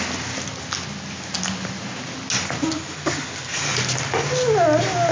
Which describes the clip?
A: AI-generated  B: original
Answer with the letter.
B